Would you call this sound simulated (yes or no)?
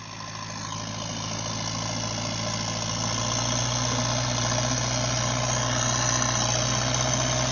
no